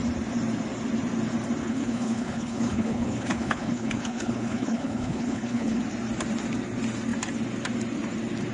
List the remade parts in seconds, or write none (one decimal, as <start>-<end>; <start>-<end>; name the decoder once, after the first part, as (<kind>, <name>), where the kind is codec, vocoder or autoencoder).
1.6-5.8 (codec, HILCodec)